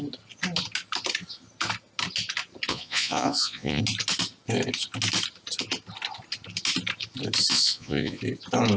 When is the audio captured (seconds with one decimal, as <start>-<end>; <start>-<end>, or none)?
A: 0.0-2.7; 3.8-7.5; 8.2-8.8